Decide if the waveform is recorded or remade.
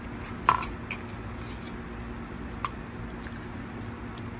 recorded